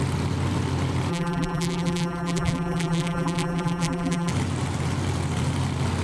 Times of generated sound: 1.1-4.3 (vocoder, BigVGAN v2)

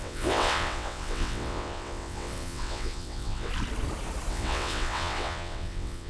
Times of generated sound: 0.0-3.5 (vocoder, WaveNeXt); 4.3-6.1

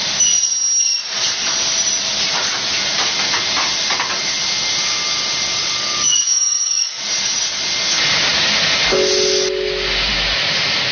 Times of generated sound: 5.6-7.1 (codec, DAC)

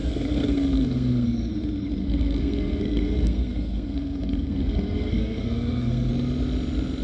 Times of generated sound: 0.0-1.5 (codec, SNAC); 2.0-6.1